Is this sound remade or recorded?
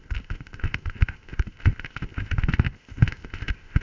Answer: remade